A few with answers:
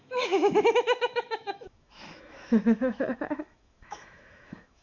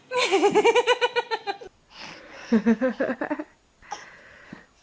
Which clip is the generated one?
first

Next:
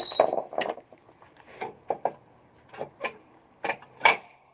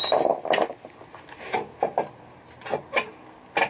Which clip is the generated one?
first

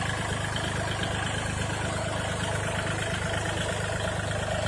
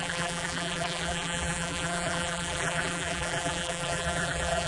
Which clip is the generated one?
second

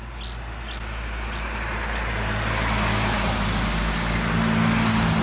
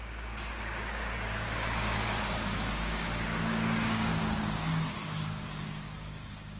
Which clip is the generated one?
second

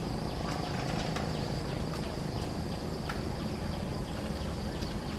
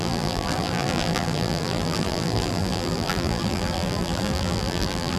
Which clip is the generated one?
second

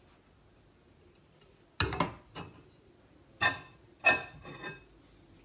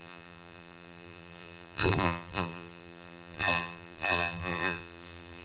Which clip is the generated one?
second